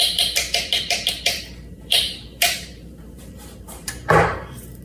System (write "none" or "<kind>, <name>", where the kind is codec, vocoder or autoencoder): vocoder, BigVGAN v2